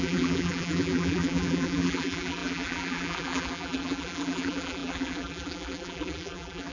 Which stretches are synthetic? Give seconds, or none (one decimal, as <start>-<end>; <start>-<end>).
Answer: 0.0-6.7